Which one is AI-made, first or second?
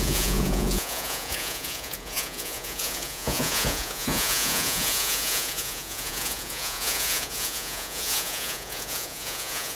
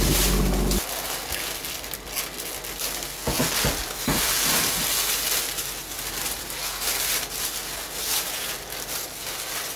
first